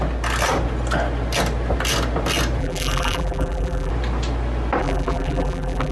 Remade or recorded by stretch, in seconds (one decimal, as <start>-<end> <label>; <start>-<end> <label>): 0.0-2.6 recorded; 2.6-3.9 remade; 3.9-4.8 recorded; 4.8-5.9 remade